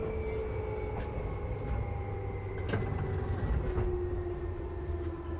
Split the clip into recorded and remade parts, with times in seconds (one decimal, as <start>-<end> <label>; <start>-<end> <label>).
0.0-5.4 recorded